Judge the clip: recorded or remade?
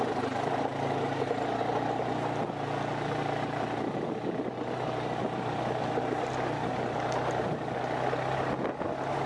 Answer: recorded